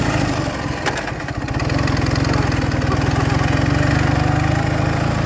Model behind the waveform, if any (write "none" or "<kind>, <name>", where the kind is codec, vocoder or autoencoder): none